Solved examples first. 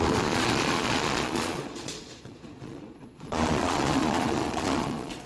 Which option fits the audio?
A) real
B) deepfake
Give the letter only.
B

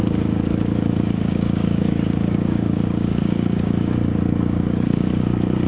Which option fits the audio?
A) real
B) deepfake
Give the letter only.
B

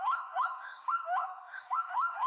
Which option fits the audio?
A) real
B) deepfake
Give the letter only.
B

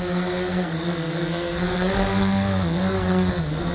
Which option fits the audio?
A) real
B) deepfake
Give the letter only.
B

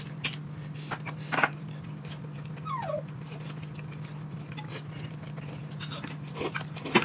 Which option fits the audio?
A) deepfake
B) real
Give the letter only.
B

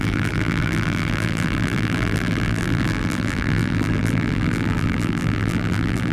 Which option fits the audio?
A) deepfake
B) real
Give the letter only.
A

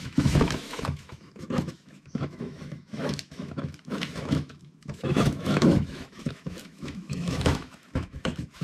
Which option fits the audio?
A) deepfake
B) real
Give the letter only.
A